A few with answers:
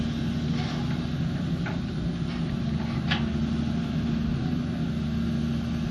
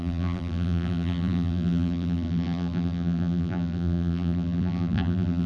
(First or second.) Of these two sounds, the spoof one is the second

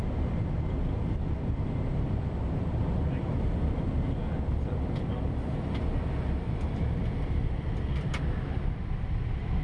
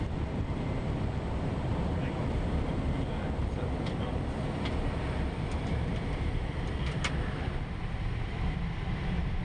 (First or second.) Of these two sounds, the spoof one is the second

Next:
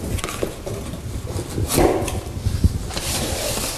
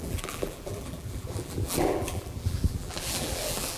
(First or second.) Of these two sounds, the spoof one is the second